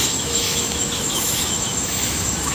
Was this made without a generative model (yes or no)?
no